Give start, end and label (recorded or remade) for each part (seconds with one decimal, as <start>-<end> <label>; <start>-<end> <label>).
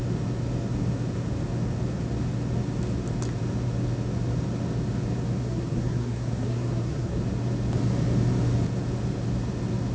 0.0-5.4 recorded; 5.4-7.2 remade; 7.2-9.9 recorded